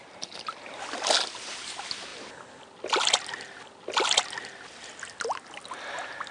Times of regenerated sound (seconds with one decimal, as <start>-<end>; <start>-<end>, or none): none